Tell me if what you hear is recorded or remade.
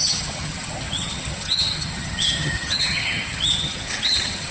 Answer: remade